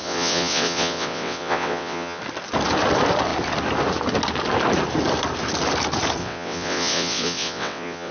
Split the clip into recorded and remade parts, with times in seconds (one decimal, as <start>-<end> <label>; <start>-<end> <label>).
0.0-2.2 remade; 2.2-6.2 recorded; 6.2-8.1 remade

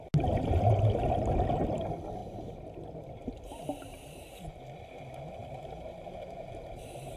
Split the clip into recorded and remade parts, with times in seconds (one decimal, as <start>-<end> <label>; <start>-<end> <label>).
0.0-2.2 recorded; 2.2-2.9 remade; 2.9-5.4 recorded; 5.4-6.1 remade; 6.1-7.2 recorded